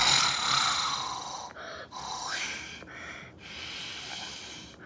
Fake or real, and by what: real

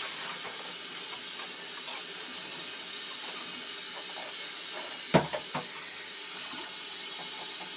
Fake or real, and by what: real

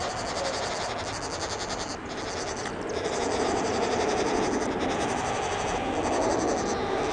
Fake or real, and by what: real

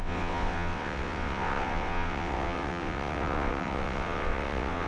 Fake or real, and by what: fake, vocoder, WaveNeXt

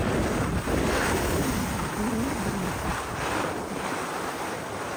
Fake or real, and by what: real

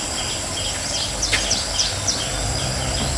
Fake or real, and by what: real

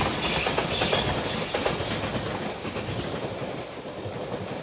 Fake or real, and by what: real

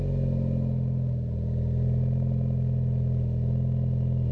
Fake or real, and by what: real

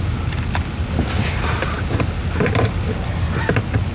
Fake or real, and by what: real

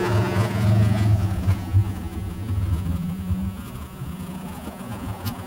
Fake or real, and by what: fake, vocoder, Vocos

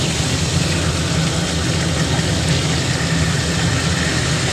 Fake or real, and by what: real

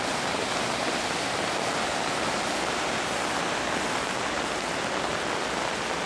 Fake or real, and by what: real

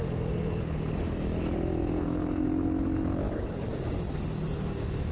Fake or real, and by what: real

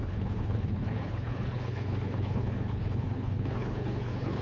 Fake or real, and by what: fake, codec, HILCodec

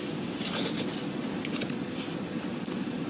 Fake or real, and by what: real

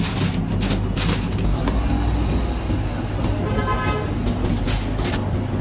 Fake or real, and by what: real